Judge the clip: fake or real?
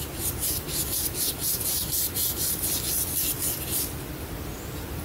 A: real